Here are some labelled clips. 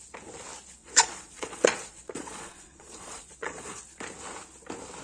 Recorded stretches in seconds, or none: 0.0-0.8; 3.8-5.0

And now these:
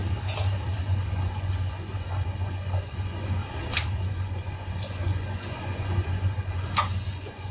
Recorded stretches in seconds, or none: 0.0-0.8; 3.4-4.0

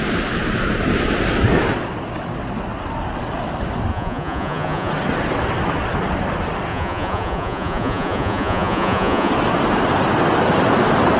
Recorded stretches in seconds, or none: 0.0-3.9; 4.9-6.7; 9.3-11.2

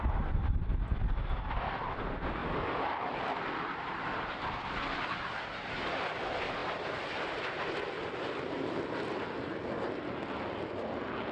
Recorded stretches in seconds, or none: 0.0-11.3

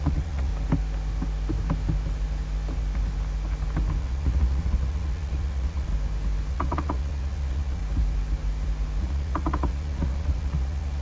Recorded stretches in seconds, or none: 0.5-4.0; 5.9-6.5; 7.8-9.0

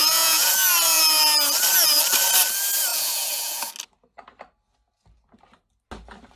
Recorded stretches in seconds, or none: 0.5-2.9; 3.7-6.3

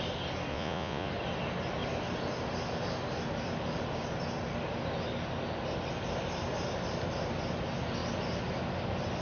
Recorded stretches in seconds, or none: 0.0-0.5; 1.1-9.2